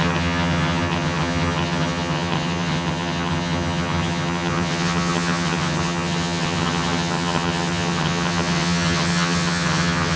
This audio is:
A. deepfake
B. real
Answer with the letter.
A